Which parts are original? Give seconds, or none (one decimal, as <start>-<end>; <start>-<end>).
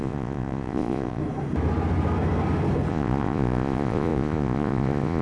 1.2-2.9